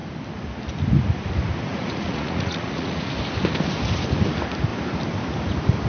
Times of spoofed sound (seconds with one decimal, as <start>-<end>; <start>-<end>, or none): 1.7-3.2